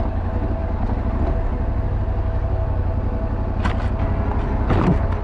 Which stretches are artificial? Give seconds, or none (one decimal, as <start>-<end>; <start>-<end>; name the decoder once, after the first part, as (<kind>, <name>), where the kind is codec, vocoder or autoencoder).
none